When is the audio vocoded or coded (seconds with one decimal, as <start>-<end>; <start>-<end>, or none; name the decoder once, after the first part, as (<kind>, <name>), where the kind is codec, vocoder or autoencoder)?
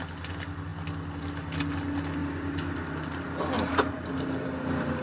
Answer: none